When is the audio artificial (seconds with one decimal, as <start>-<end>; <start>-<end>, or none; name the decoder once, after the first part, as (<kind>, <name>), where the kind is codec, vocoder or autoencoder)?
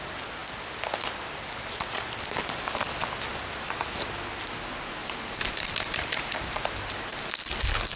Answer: 5.0-7.2 (vocoder, BigVGAN v2)